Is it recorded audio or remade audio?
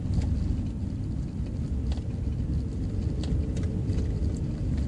recorded